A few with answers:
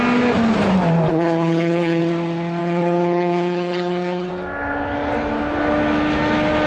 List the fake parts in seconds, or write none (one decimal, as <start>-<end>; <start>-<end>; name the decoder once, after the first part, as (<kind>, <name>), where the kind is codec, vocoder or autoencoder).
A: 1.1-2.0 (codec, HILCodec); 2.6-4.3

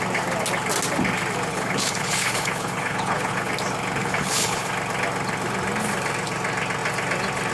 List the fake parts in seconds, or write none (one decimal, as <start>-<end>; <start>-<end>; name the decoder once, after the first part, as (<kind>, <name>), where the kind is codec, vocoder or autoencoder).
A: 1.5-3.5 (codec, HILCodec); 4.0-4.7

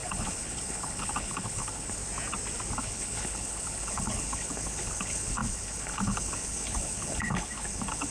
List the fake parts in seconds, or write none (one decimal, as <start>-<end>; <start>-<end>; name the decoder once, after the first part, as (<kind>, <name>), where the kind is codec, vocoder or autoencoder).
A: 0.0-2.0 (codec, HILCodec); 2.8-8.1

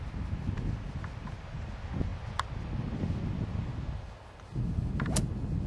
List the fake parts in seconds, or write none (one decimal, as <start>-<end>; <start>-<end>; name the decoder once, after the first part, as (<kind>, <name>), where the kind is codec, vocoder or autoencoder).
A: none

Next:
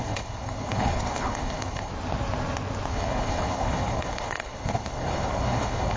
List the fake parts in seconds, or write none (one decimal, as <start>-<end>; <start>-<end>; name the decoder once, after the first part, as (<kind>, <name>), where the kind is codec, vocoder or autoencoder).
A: 0.0-1.9 (codec, HILCodec); 2.9-6.0

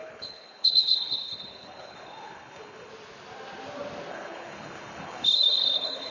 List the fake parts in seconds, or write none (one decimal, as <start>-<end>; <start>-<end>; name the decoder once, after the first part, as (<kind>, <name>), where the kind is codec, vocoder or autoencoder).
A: 0.0-2.9 (codec, HILCodec); 4.1-6.1

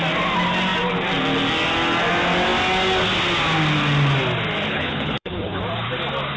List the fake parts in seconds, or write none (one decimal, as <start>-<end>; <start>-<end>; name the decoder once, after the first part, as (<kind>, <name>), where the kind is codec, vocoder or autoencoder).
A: 4.7-5.6 (codec, HILCodec)